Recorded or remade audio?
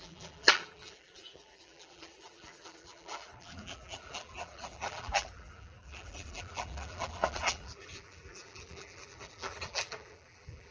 remade